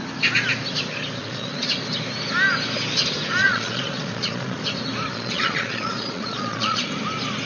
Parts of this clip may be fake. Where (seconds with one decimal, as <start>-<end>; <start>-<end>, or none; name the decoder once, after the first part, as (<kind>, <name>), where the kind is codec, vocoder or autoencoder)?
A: 1.2-1.7 (vocoder, Vocos); 3.4-4.6; 5.1-6.9

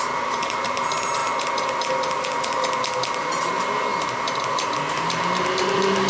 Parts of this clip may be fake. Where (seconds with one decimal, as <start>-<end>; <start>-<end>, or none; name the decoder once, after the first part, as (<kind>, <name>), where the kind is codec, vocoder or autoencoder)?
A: 0.0-1.2 (vocoder, BigVGAN v2); 4.9-6.1